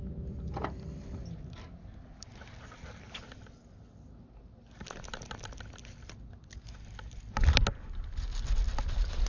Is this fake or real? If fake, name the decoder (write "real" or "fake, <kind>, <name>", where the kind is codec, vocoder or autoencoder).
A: real